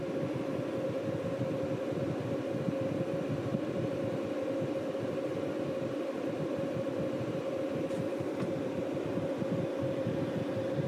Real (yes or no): yes